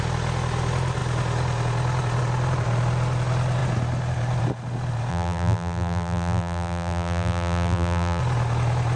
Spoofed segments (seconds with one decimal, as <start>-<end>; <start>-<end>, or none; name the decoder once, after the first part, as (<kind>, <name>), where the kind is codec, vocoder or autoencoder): 5.1-8.2 (vocoder, BigVGAN v2)